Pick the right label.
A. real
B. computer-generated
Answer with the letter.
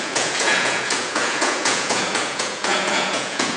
B